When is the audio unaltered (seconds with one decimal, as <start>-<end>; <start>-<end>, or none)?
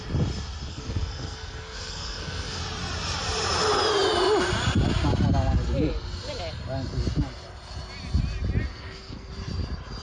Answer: 0.0-0.7; 2.6-8.7; 9.3-10.0